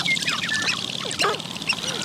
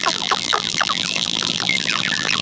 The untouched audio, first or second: first